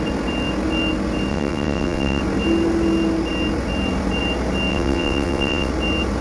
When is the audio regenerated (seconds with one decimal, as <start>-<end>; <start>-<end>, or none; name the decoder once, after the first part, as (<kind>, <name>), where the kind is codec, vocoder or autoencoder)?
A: 1.3-2.2 (vocoder, WaveNeXt); 4.7-5.7